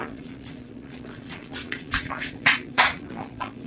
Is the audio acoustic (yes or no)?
no